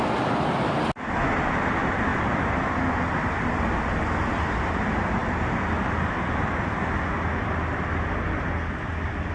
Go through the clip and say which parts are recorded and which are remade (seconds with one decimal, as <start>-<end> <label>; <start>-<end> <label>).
0.0-9.3 recorded